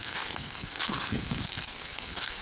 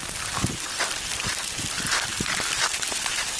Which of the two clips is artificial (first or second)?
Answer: first